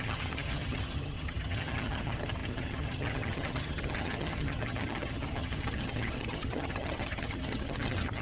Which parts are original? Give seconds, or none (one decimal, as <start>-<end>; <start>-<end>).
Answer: none